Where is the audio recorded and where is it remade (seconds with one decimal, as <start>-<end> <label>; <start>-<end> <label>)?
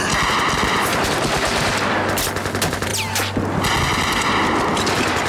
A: 0.0-5.3 recorded